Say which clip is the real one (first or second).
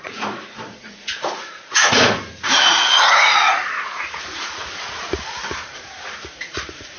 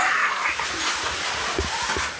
second